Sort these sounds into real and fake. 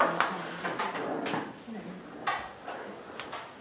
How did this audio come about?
real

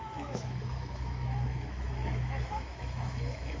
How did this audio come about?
fake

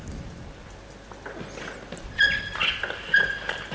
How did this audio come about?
real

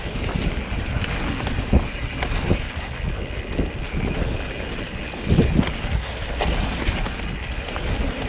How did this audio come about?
real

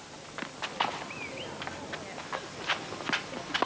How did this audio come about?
real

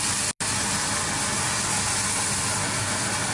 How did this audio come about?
real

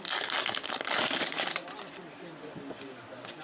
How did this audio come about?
real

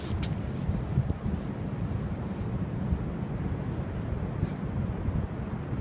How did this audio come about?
real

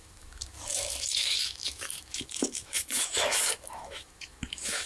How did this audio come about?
fake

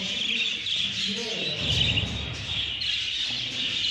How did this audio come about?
fake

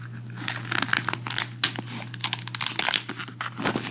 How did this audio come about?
real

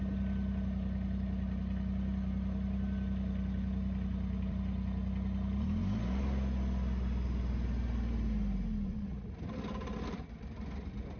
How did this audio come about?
real